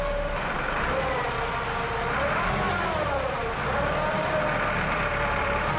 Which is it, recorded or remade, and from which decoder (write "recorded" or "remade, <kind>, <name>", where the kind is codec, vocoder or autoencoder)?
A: remade, vocoder, BigVGAN v2